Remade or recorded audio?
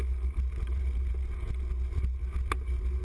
recorded